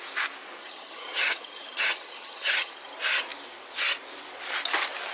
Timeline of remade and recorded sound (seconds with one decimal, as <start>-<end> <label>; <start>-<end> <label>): 0.0-0.6 recorded; 0.6-2.7 remade; 2.7-5.1 recorded